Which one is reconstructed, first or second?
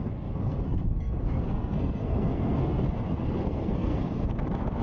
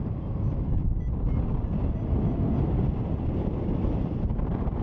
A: first